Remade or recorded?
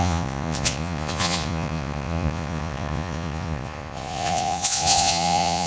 remade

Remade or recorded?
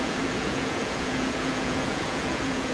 remade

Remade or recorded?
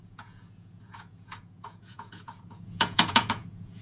remade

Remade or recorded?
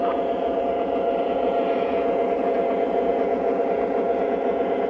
remade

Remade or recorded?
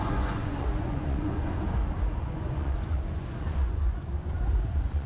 remade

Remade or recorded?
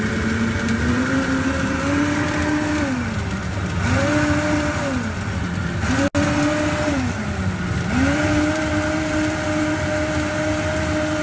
recorded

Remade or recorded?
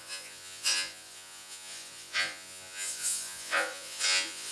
remade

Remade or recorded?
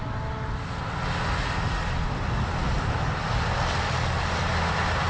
recorded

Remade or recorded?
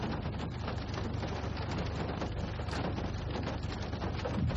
recorded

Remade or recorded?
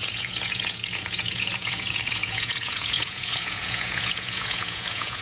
remade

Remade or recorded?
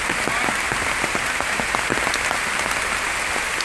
recorded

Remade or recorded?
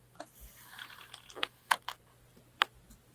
recorded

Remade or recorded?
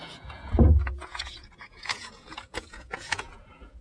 remade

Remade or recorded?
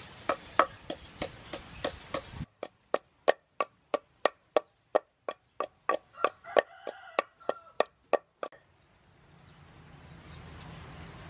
recorded